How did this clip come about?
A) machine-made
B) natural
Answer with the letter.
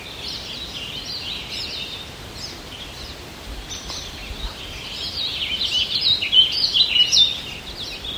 B